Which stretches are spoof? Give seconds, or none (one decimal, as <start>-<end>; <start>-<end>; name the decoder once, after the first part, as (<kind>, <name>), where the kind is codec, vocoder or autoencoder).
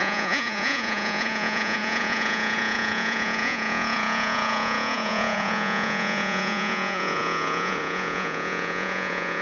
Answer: 0.0-9.4 (vocoder, Vocos)